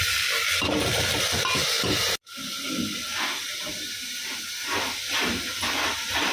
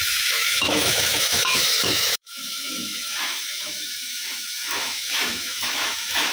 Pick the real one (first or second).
first